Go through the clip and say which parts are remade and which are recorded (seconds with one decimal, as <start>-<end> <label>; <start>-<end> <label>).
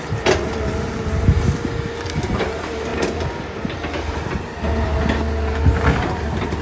0.0-6.6 recorded